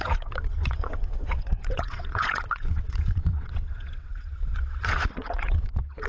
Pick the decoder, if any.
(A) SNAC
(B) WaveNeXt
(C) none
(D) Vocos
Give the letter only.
B